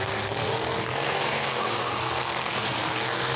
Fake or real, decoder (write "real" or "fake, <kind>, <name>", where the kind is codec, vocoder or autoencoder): fake, codec, SNAC